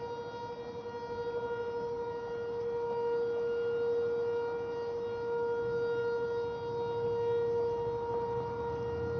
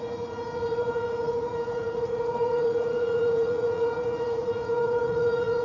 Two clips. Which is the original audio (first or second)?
first